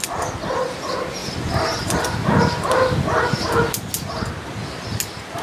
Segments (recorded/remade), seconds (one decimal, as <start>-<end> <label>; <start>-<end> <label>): 0.0-5.4 recorded